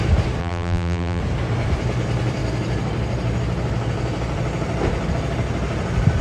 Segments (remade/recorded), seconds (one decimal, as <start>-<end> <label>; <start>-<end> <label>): 0.0-0.4 recorded; 0.4-1.2 remade; 1.2-6.2 recorded